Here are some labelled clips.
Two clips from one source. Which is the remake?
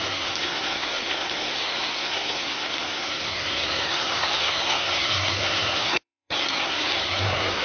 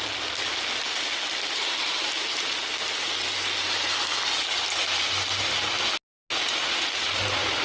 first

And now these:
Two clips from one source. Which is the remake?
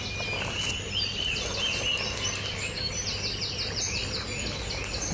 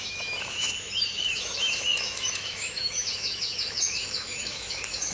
second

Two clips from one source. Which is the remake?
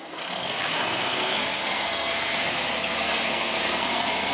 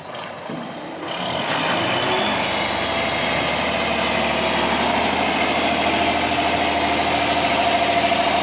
first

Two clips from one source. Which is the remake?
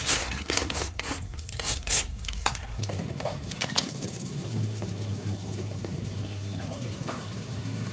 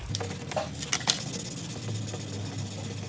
first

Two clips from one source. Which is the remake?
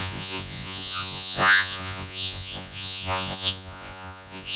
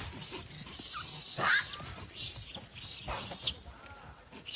first